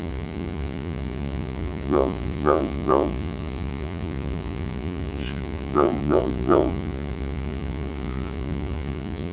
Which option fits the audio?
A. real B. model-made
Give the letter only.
B